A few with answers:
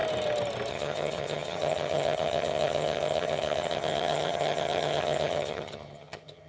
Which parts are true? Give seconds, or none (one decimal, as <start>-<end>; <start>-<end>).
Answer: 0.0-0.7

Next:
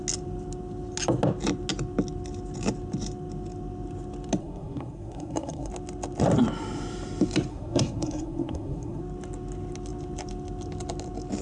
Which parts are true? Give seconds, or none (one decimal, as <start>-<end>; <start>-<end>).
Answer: 0.0-4.4; 5.7-7.5; 9.0-11.4

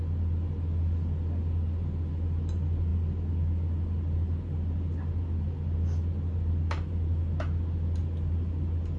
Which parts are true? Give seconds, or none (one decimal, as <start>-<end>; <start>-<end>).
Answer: 0.0-9.0

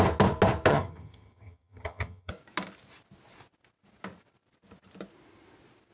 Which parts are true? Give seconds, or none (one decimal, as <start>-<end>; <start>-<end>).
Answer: 0.0-0.7; 2.3-5.9

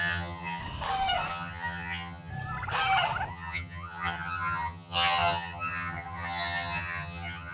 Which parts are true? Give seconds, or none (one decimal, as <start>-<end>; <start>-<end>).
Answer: 0.6-1.3; 2.3-3.3

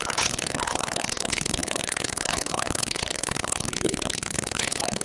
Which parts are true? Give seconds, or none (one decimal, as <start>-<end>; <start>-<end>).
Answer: none

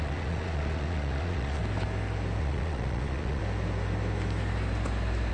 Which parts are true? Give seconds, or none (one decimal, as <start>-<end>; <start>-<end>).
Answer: 1.6-2.4; 3.4-5.3

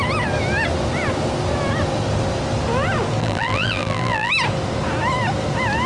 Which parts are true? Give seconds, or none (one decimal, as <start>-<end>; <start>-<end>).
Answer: 0.0-3.2; 4.3-5.9